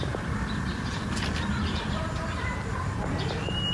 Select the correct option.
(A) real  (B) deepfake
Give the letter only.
B